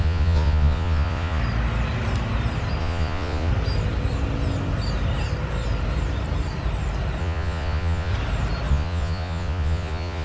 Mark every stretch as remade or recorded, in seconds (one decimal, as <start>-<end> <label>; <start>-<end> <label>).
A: 0.0-1.4 remade; 1.4-2.8 recorded; 2.8-3.5 remade; 3.5-7.2 recorded; 7.2-8.1 remade; 8.1-8.7 recorded; 8.7-10.2 remade